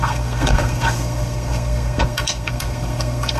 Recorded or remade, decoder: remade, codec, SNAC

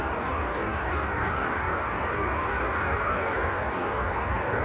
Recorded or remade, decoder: remade, codec, DAC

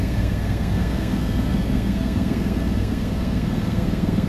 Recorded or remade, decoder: remade, codec, SNAC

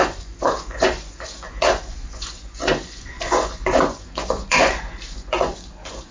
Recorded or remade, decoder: remade, vocoder, Vocos